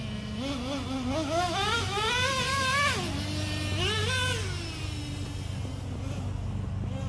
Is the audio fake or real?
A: real